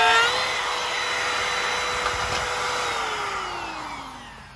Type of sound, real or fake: real